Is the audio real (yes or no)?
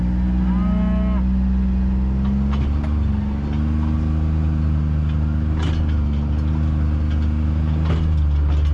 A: yes